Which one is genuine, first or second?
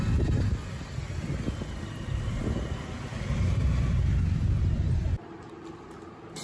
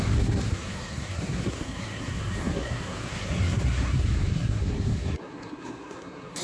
first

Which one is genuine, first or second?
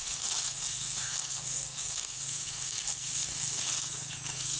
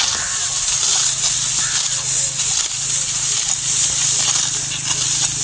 second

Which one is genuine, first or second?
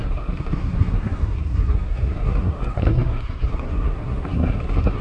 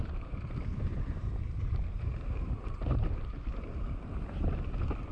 second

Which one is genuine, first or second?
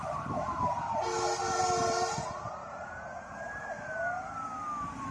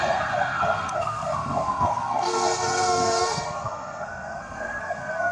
first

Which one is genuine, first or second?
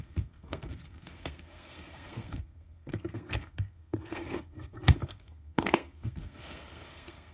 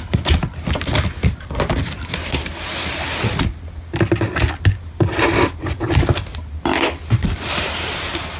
second